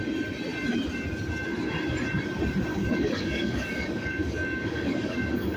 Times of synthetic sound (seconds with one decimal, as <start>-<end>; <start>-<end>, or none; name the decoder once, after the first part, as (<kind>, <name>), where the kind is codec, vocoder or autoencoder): 2.7-5.6 (codec, DAC)